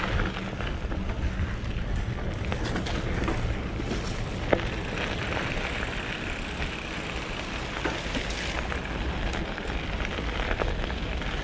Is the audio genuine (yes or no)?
yes